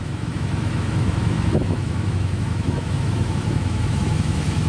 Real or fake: fake